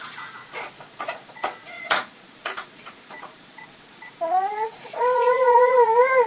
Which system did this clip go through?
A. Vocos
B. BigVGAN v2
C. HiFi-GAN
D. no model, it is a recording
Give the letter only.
A